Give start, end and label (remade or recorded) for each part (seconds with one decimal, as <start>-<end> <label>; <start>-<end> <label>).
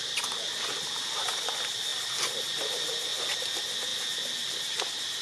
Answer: 0.0-5.2 recorded